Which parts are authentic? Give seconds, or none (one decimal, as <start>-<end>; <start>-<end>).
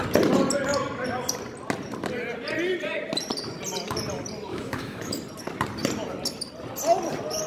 0.0-4.5; 5.1-7.5